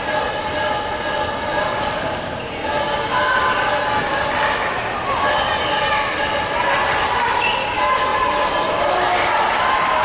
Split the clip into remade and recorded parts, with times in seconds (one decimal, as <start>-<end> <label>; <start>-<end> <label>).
0.0-10.0 recorded